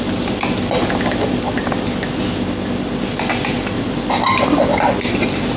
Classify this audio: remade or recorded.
recorded